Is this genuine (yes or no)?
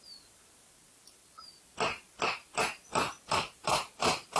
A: yes